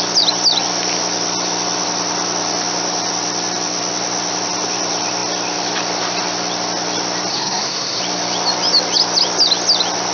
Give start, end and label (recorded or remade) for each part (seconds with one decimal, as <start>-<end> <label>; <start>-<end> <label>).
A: 0.0-7.3 recorded; 7.3-8.0 remade; 8.0-10.1 recorded